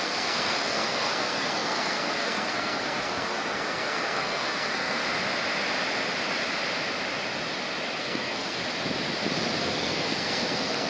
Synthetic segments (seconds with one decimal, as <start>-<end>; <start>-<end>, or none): 0.0-5.0; 8.0-8.6; 9.6-10.9